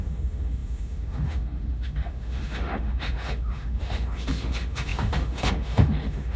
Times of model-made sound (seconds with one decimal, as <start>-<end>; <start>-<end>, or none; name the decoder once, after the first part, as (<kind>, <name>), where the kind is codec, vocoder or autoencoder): 0.0-6.4 (autoencoder, DAC-VAE)